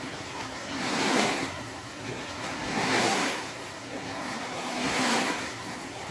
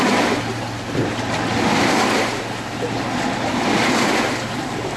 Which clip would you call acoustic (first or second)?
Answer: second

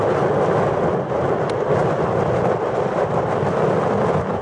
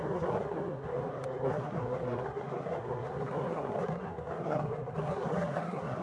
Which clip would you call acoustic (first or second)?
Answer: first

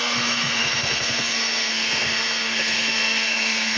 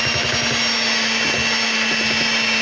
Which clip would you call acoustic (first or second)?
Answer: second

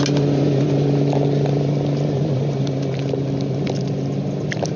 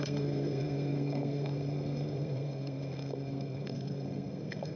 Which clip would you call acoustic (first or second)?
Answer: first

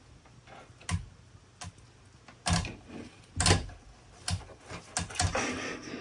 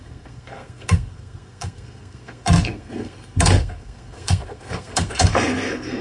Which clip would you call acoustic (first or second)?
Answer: first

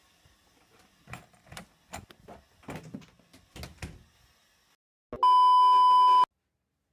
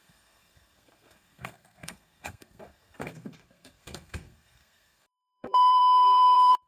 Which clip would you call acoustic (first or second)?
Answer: first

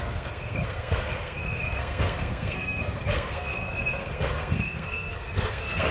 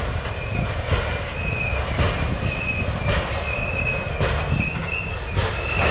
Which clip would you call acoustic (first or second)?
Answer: second